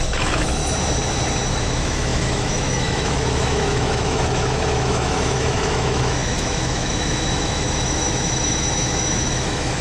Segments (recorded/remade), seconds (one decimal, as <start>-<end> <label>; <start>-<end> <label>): 0.0-0.6 remade; 0.6-1.5 recorded; 1.5-9.8 remade